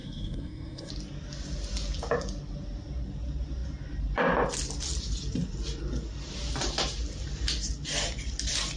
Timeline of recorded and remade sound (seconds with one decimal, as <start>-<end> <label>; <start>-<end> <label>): 0.0-0.9 remade; 0.9-8.8 recorded